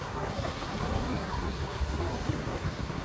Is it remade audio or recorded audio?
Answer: remade